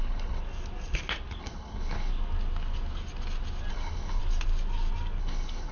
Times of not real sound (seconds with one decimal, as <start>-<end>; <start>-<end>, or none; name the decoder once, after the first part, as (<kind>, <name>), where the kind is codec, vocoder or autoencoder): 0.0-0.4 (codec, HILCodec); 1.4-2.1; 3.7-4.2; 5.2-5.7